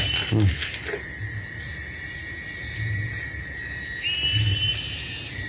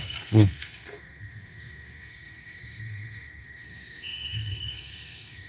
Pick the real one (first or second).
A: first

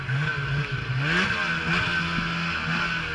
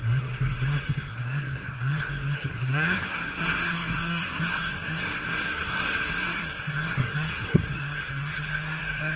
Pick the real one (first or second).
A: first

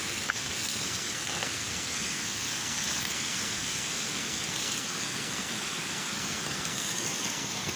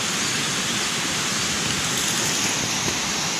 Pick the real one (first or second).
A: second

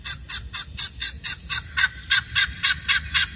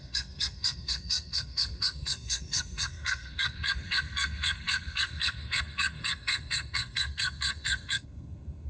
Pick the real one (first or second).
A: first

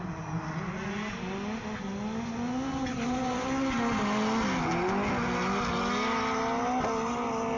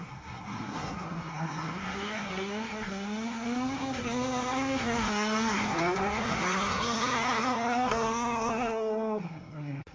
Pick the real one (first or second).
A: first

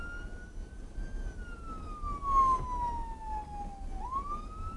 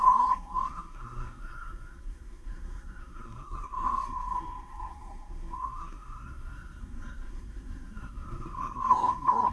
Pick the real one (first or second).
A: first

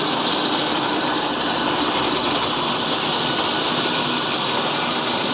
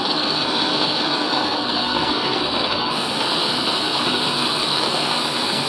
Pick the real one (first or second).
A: first